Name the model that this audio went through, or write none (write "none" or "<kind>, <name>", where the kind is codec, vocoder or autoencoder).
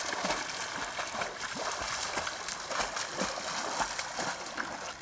none